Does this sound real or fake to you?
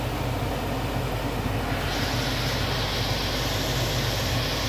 real